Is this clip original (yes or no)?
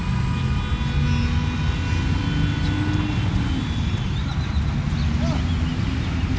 yes